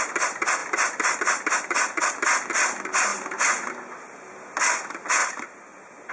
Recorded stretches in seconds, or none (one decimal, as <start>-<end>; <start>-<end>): 0.0-3.1; 3.7-5.2